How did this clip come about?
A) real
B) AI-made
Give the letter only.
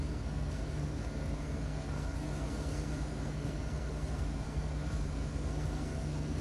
B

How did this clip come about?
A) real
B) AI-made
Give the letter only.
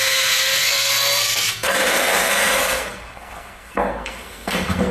B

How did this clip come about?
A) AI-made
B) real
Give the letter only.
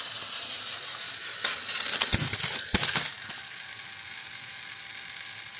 B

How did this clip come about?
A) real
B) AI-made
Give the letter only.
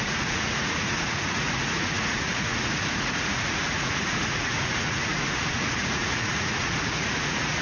B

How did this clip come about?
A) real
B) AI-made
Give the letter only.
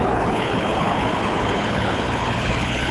B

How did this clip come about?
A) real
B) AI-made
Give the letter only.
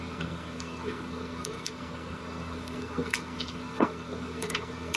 B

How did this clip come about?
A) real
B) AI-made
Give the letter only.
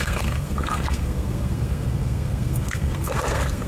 B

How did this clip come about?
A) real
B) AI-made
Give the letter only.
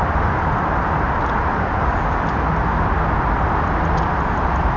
A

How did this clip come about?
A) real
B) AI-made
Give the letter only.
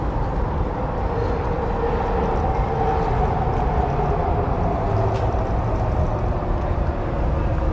A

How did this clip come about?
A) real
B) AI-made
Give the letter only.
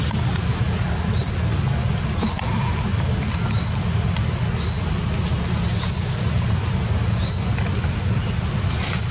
A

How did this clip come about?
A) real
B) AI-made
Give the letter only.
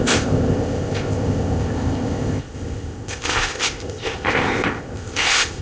B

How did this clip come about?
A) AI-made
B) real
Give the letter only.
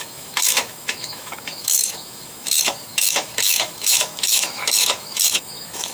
A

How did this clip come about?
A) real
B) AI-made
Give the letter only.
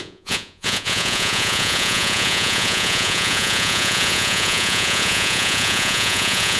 B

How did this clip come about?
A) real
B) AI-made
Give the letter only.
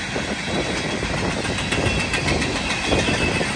A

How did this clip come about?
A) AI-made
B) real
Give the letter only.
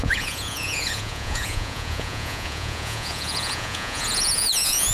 A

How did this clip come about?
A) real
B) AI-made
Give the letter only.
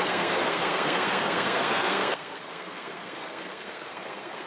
B